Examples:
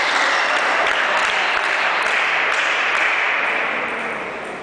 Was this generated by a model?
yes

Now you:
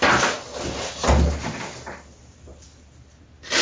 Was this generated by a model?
no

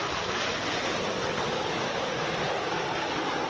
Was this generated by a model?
no